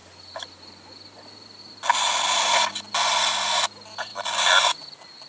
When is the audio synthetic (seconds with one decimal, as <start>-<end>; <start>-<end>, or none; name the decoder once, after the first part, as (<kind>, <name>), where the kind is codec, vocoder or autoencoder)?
none